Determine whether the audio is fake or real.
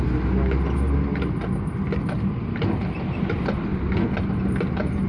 real